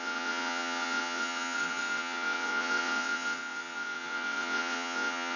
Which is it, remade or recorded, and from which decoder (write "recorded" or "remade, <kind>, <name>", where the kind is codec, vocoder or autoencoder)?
remade, vocoder, WaveNeXt